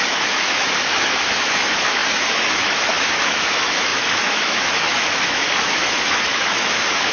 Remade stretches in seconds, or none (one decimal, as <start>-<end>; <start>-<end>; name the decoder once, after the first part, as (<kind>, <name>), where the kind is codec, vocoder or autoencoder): 0.0-7.1 (autoencoder, DAC-VAE)